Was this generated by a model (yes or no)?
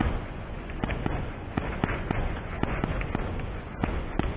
yes